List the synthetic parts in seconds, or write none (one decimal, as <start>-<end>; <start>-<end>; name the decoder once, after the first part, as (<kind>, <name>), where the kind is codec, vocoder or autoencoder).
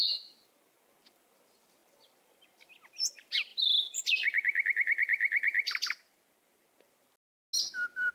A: none